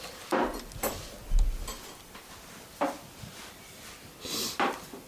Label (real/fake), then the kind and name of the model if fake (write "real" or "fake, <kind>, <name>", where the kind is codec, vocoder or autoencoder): real